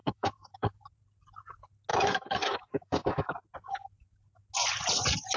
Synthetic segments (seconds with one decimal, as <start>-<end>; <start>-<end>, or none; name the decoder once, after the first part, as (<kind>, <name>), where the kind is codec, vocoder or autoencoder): 0.0-0.8 (autoencoder, DAC-VAE); 1.9-3.4